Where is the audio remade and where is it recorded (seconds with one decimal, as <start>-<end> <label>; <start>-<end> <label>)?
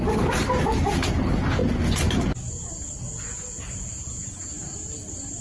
0.0-3.1 recorded; 3.1-4.4 remade; 4.4-5.4 recorded